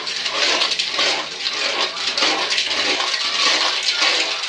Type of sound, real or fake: real